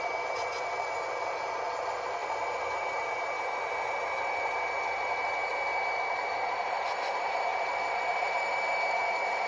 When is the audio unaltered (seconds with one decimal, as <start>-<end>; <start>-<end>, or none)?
5.5-6.1